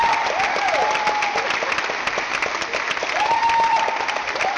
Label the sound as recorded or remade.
recorded